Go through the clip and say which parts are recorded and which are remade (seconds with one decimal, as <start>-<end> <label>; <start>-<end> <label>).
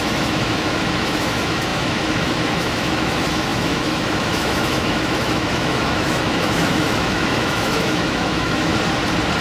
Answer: 0.0-8.7 remade; 8.7-9.4 recorded